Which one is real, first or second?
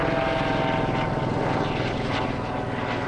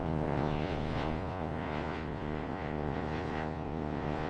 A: first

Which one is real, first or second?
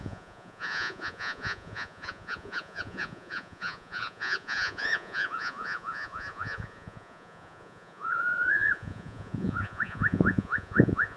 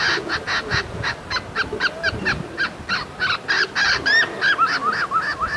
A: second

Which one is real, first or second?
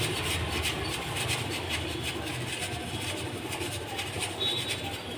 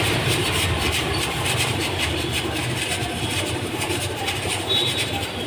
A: first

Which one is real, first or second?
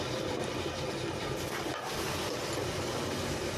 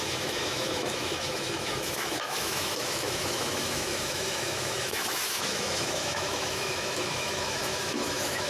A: first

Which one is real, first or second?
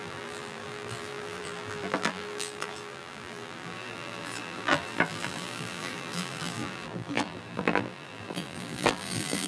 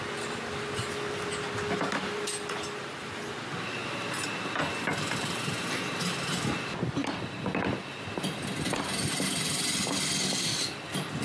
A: second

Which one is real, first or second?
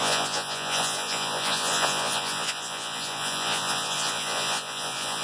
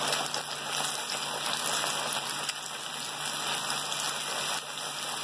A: second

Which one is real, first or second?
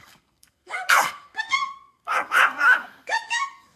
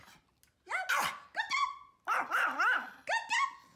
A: second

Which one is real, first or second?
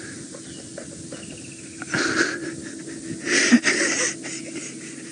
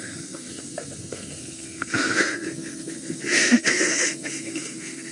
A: first